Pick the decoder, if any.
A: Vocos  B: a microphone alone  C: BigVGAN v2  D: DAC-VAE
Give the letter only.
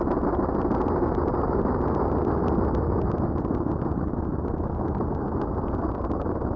B